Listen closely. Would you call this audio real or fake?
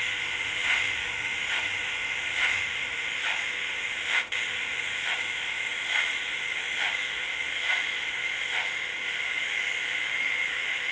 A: fake